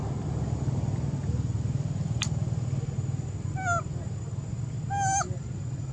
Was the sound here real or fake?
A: real